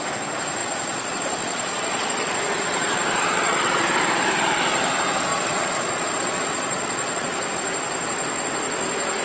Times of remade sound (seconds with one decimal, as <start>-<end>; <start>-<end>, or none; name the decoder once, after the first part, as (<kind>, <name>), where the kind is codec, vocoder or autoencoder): 0.6-3.9 (vocoder, Vocos); 5.3-7.5